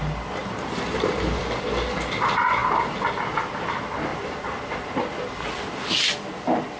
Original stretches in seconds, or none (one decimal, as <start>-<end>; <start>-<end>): 0.0-0.4; 1.4-4.1; 5.0-6.8